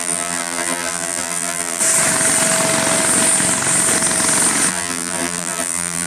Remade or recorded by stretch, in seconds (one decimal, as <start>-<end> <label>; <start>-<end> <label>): 0.0-1.8 remade; 1.8-4.7 recorded; 4.7-6.1 remade